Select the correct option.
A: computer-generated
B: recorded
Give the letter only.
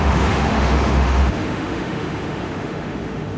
A